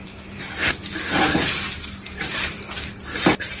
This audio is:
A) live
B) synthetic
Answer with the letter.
B